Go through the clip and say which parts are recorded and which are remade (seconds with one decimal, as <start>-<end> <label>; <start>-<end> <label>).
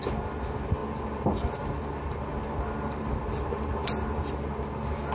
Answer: 0.0-5.1 recorded